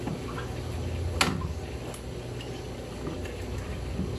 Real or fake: real